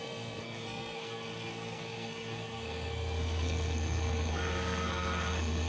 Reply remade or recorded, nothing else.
remade